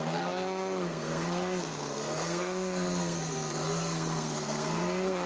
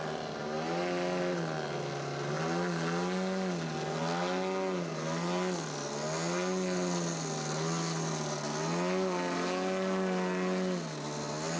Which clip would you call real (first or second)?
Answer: second